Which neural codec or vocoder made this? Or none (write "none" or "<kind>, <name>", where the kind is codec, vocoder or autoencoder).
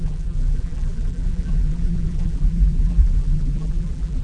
vocoder, BigVGAN v2